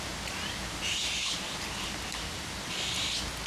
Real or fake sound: real